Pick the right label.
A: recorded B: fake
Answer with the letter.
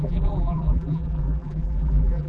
B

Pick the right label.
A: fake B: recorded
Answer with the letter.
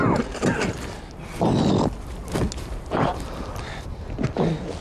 B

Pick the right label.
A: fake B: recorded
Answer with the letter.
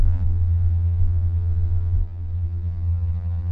A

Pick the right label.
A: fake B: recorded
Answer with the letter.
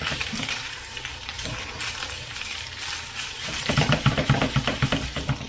A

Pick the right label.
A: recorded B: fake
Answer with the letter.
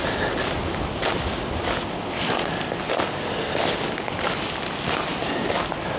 A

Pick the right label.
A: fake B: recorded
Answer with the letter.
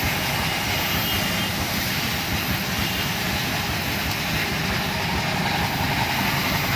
B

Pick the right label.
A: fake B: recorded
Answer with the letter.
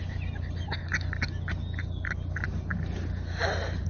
B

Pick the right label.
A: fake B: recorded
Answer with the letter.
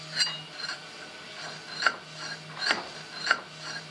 B